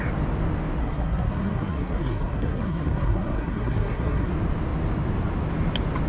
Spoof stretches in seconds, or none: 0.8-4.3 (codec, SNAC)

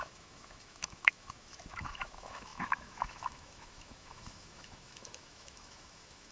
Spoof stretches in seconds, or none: 0.0-6.3 (autoencoder, DAC-VAE)

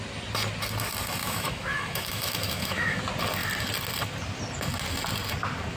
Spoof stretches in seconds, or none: 1.2-3.0 (autoencoder, DAC-VAE)

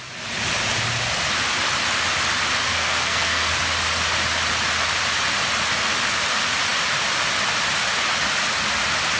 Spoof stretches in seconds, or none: 2.6-3.5 (codec, SNAC)

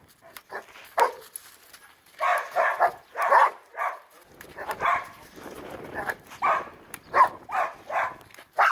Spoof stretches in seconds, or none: 2.3-5.9 (vocoder, BigVGAN v2)

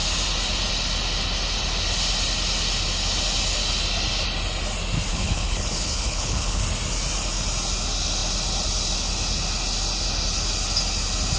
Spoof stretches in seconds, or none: 5.1-6.6 (codec, HILCodec)

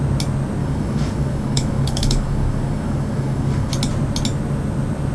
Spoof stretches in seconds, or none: 0.6-3.7 (codec, DAC)